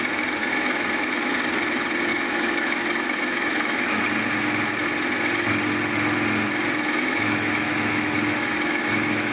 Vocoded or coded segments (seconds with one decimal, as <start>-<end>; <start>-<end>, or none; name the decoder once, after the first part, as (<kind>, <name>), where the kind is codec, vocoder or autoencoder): 0.4-1.3 (autoencoder, DAC-VAE); 2.1-4.0; 6.8-9.3